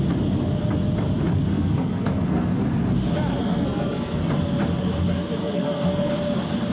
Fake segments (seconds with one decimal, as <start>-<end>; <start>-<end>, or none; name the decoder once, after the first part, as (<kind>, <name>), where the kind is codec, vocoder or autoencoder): 1.5-2.6 (codec, SNAC); 3.4-4.3; 5.4-6.1